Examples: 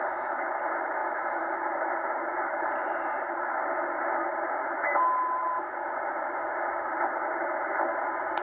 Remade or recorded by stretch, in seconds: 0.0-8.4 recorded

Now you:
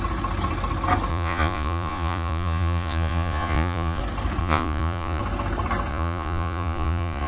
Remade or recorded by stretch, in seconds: 0.0-1.1 recorded; 1.1-4.0 remade; 4.0-4.4 recorded; 4.4-5.2 remade; 5.2-5.9 recorded; 5.9-7.3 remade

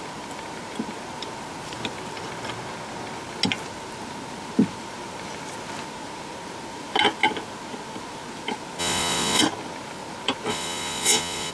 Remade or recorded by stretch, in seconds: 0.0-8.8 recorded; 8.8-9.4 remade; 9.4-10.5 recorded; 10.5-11.5 remade